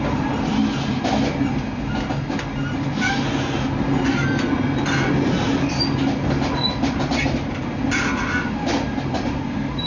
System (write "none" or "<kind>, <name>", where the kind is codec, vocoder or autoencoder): none